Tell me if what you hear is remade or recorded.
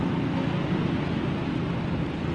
recorded